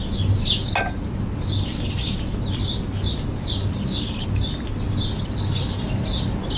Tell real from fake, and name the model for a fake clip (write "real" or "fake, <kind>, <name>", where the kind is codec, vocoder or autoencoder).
real